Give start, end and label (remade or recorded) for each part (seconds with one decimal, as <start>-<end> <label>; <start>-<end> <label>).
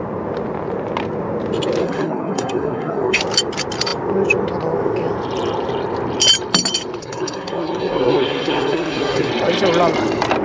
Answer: 0.0-1.8 recorded; 1.8-3.2 remade; 3.2-7.0 recorded; 7.0-9.3 remade; 9.3-10.4 recorded